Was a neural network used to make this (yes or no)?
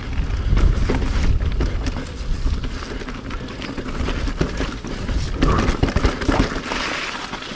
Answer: no